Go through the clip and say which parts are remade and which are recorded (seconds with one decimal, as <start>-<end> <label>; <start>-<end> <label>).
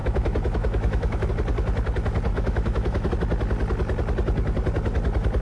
0.0-1.3 remade; 1.3-2.3 recorded; 2.3-3.1 remade; 3.1-5.4 recorded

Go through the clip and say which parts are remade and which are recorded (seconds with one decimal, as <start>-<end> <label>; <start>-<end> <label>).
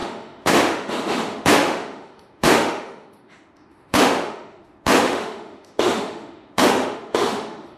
0.0-7.8 remade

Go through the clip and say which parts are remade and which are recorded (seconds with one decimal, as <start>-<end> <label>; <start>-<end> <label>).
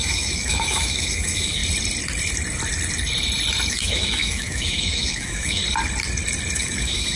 0.0-1.6 remade; 1.6-3.7 recorded; 3.7-5.6 remade; 5.6-6.6 recorded; 6.6-7.2 remade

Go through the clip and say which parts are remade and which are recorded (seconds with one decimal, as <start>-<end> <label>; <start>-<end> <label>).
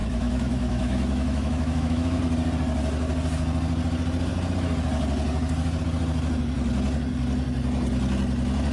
0.0-2.2 remade; 2.2-8.7 recorded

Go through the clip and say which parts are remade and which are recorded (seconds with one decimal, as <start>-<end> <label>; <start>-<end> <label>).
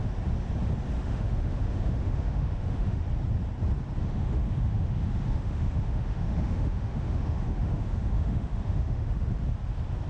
0.0-1.0 recorded; 1.0-3.0 remade; 3.0-4.0 recorded; 4.0-9.3 remade; 9.3-10.1 recorded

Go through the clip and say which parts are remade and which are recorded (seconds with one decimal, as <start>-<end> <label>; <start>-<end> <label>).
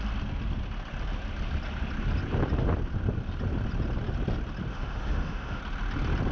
0.0-4.7 recorded; 4.7-5.6 remade; 5.6-6.3 recorded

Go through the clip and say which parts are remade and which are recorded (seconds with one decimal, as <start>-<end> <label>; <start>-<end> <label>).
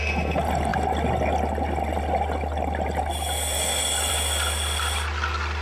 0.0-5.6 recorded